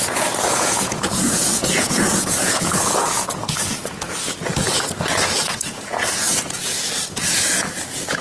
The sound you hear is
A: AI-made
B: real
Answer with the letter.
A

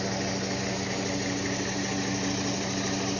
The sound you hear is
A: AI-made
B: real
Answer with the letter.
B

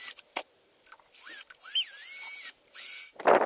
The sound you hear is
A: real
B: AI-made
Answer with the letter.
A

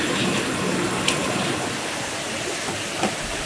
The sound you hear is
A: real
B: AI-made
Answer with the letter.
A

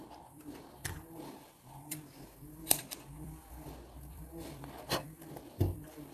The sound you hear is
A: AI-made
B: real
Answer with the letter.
A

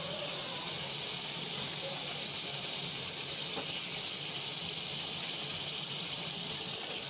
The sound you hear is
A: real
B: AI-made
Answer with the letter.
A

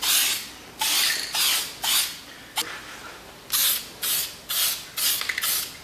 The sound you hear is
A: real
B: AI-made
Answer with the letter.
A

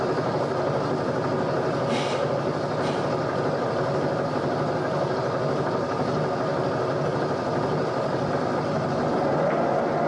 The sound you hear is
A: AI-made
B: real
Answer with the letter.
B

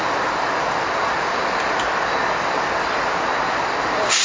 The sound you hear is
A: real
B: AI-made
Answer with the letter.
A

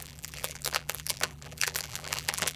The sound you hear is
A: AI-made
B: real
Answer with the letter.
A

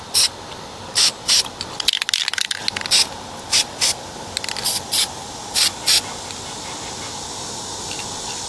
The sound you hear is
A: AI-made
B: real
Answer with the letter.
B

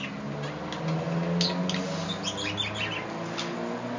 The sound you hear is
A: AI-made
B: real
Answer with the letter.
B